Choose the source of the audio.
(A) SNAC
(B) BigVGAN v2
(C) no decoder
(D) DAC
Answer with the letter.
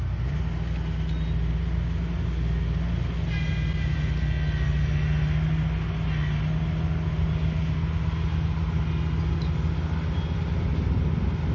C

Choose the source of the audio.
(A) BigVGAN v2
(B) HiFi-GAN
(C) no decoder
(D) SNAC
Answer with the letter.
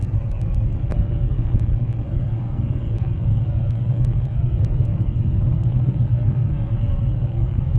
D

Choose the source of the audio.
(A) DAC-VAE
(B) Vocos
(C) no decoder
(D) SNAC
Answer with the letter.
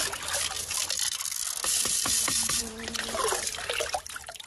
C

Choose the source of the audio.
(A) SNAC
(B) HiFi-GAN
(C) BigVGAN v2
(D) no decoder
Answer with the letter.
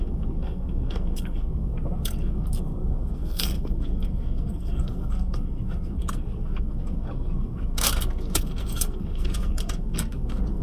A